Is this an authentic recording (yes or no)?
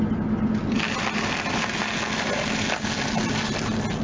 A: yes